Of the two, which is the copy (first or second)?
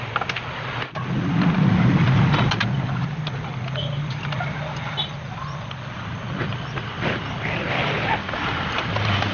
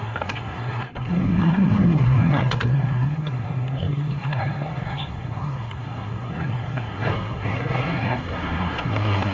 second